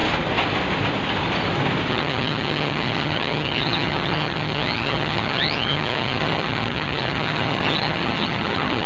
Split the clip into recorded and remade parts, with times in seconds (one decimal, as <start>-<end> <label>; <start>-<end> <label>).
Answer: 0.0-1.9 recorded; 1.9-8.9 remade